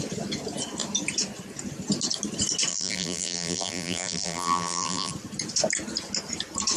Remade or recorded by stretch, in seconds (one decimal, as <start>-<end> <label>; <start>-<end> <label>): 0.0-2.7 recorded; 2.7-5.1 remade; 5.1-6.8 recorded